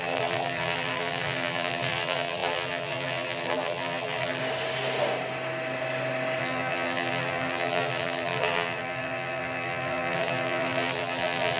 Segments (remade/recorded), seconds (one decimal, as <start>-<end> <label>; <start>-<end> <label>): 0.0-4.4 remade; 4.4-6.4 recorded; 6.4-11.6 remade